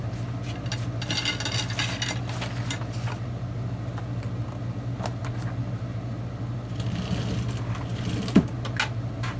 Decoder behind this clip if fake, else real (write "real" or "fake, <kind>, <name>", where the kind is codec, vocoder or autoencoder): real